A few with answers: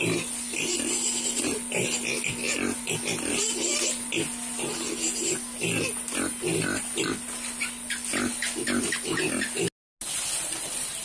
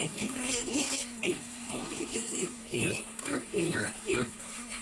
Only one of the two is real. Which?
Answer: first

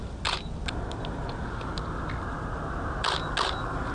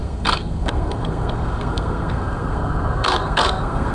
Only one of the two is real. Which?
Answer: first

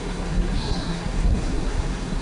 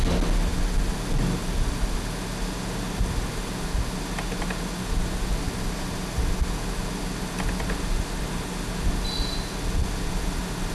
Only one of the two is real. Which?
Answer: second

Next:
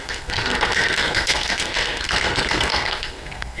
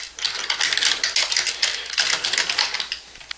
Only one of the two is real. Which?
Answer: second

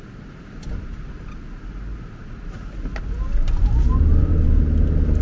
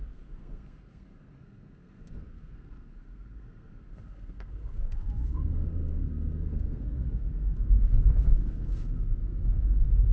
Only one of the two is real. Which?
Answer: first